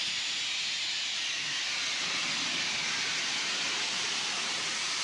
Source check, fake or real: real